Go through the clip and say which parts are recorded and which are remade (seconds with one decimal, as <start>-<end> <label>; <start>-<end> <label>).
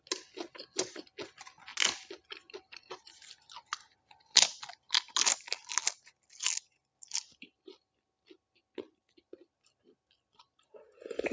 0.0-11.3 recorded